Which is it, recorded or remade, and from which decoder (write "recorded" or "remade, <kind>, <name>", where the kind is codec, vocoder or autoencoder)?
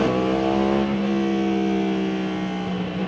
recorded